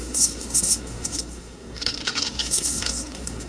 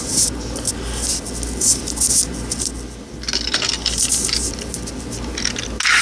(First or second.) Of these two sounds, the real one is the second